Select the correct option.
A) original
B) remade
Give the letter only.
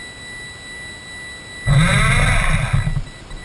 A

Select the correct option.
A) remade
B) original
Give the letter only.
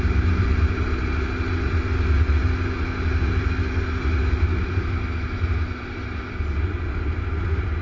B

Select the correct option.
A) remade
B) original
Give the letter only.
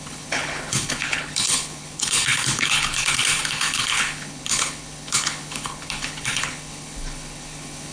A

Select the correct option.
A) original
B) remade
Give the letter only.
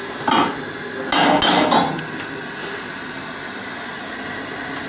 A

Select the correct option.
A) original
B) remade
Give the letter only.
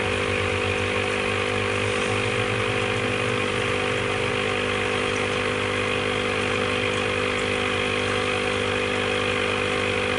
A